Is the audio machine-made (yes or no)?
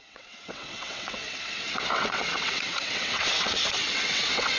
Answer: yes